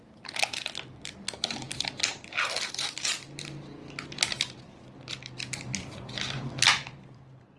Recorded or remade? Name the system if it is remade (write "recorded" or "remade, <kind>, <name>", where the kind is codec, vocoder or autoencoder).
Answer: recorded